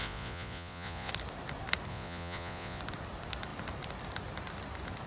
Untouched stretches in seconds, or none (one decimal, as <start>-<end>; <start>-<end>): 1.1-1.9; 2.8-5.1

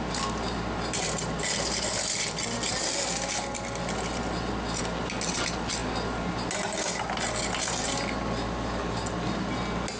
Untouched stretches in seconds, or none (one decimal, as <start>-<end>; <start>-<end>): 0.0-10.0

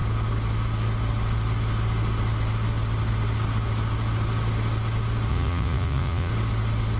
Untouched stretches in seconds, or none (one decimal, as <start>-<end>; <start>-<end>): 0.0-5.3; 6.3-7.0

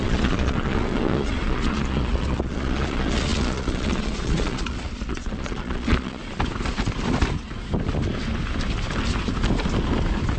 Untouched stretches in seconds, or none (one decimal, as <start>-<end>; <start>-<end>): 6.2-10.4

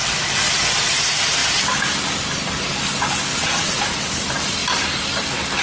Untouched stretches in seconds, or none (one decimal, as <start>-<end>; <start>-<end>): 0.0-3.3; 3.8-5.6

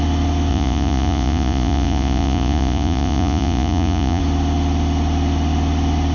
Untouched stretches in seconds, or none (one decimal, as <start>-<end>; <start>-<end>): 0.0-0.5; 4.2-6.1

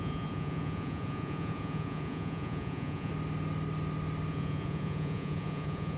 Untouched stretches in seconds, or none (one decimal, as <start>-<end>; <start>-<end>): 3.1-4.3

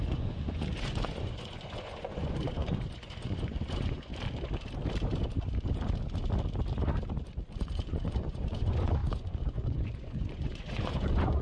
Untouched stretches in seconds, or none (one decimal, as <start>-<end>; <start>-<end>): 4.1-7.6